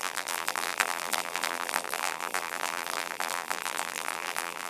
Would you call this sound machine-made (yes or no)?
yes